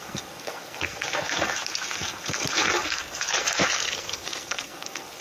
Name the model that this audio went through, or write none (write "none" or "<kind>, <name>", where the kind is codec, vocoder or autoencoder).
codec, SNAC